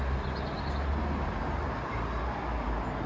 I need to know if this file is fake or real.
real